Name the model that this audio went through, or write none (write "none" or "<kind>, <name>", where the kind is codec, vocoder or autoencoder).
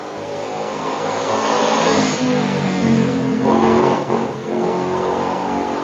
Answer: codec, SNAC